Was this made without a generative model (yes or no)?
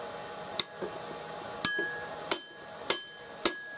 yes